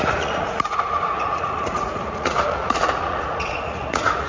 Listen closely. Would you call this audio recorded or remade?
remade